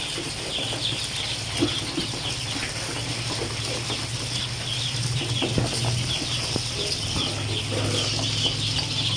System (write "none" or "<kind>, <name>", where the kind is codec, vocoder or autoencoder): none